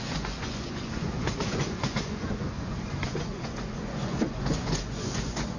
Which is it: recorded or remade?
remade